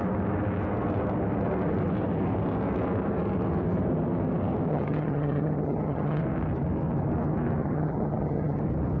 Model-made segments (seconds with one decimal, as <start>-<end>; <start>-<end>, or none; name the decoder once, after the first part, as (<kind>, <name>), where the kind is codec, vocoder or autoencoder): 4.7-6.2 (vocoder, HiFi-GAN); 7.6-8.6